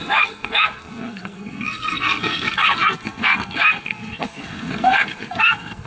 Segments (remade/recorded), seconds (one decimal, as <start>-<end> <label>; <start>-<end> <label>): 0.0-5.9 remade